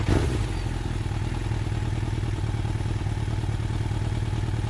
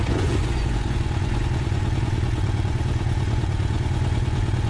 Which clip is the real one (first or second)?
first